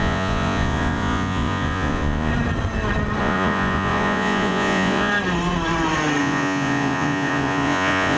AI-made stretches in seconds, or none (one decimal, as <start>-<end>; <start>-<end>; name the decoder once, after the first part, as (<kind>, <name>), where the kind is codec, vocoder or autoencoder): 0.0-2.3 (vocoder, Vocos); 3.2-5.1; 6.2-8.2